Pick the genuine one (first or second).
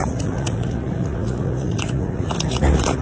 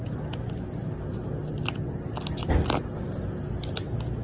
second